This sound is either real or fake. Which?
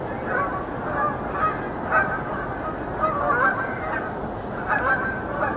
real